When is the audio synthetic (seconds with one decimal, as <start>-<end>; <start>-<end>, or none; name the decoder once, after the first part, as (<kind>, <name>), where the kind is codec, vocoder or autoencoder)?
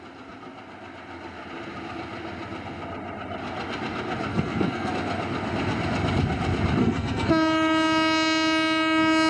4.3-4.9 (codec, SNAC); 6.8-7.3